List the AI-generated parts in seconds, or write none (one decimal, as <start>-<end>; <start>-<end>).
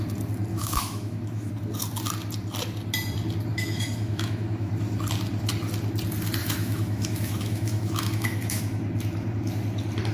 0.5-1.5; 3.5-4.7; 6.4-8.6